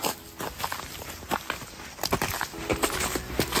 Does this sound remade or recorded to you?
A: recorded